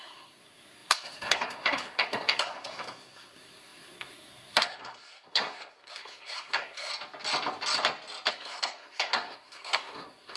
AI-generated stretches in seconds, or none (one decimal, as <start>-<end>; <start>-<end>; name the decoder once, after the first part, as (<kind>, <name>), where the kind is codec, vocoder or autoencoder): 0.0-6.9 (codec, SNAC); 8.3-10.4